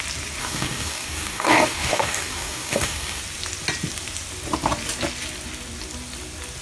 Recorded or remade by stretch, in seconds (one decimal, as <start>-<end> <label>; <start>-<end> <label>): 0.0-0.4 recorded; 0.4-3.2 remade; 3.2-6.6 recorded